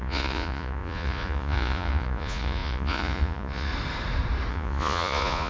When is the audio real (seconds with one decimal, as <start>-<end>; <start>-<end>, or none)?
3.7-4.5